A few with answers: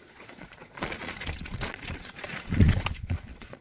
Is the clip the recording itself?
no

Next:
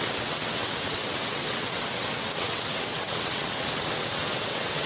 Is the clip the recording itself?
no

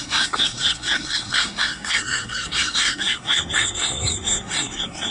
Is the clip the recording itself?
no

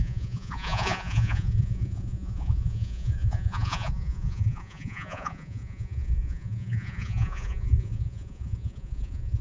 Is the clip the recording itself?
no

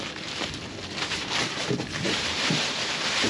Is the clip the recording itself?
no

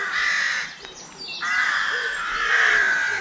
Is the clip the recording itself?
yes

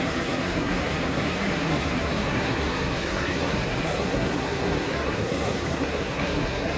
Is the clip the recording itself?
no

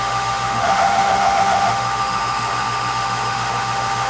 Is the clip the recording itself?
no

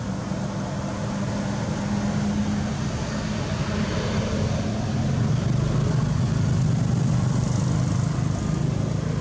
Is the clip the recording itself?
yes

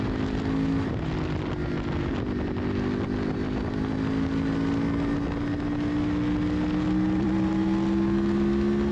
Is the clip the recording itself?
yes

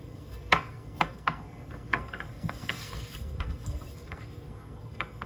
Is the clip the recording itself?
no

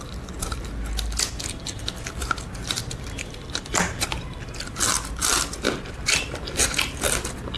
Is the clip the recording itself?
yes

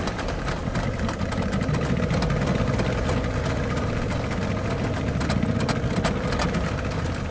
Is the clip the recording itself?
yes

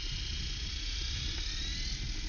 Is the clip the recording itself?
yes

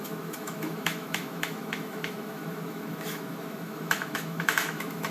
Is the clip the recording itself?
no